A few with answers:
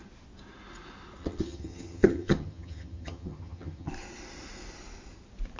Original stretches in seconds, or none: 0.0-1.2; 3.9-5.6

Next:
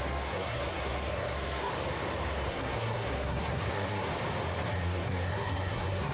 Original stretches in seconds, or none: 1.7-2.5; 4.1-4.7

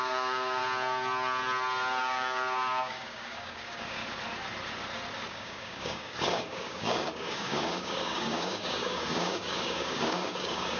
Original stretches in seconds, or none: 0.6-2.0; 4.0-5.3

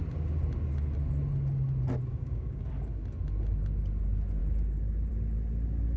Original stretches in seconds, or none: 0.0-2.1; 2.7-6.0

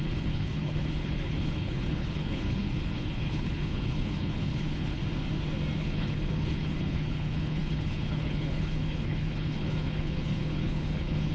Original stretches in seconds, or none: 5.0-5.8